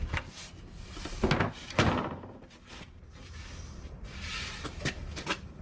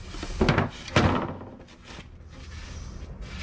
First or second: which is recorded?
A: second